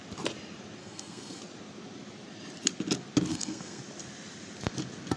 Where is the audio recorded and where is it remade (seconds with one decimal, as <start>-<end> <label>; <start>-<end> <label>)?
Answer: 0.0-0.8 recorded; 0.8-1.4 remade; 1.4-3.3 recorded; 3.3-3.8 remade; 3.8-5.2 recorded